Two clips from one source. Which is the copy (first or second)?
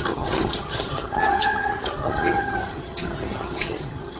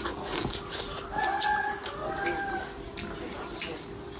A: first